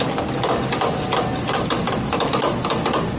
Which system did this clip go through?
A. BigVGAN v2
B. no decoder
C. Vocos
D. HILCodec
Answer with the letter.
B